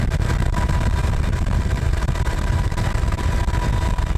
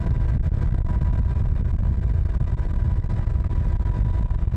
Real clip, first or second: second